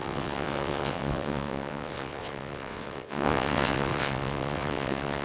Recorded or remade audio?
remade